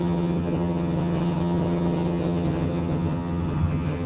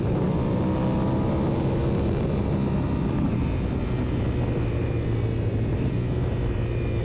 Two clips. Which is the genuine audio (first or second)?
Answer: second